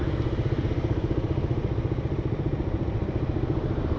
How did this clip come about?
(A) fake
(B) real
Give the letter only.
B